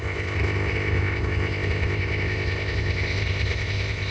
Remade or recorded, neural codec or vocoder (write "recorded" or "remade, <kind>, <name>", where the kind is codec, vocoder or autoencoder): remade, codec, ZipCodec